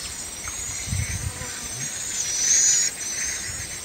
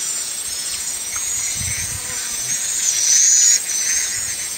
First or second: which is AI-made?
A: second